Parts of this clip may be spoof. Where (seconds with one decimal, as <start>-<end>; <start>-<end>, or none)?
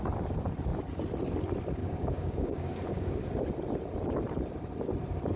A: 1.8-3.3